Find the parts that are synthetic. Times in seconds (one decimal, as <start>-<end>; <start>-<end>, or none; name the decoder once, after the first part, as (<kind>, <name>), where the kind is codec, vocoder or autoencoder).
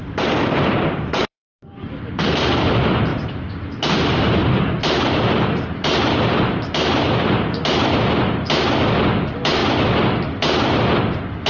0.0-2.4 (vocoder, BigVGAN v2); 3.1-7.7